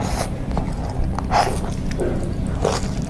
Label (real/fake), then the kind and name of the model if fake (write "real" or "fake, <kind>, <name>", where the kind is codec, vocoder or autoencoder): real